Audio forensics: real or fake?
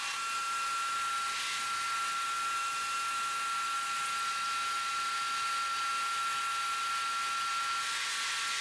real